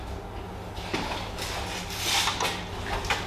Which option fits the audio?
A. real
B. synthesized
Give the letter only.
A